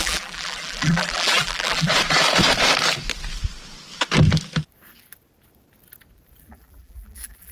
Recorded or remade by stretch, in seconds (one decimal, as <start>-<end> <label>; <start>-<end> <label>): 0.0-1.9 remade; 1.9-6.4 recorded; 6.4-7.5 remade